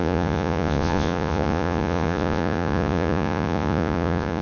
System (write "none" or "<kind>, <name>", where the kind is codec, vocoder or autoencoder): vocoder, Vocos